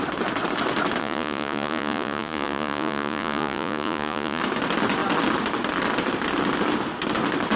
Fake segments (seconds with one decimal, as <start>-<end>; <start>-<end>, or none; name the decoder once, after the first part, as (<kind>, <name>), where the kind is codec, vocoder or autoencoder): 1.0-4.4 (vocoder, Vocos)